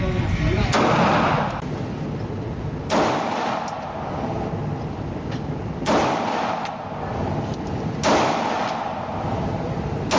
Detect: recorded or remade recorded